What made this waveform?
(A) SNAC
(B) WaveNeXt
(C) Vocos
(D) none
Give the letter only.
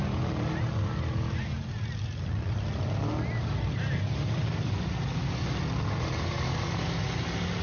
D